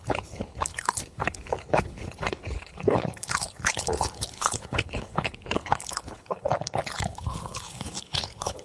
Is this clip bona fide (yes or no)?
no